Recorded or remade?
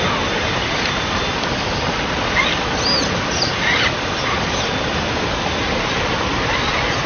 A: recorded